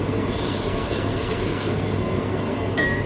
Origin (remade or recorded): remade